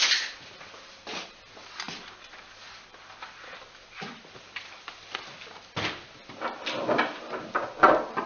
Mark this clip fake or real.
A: real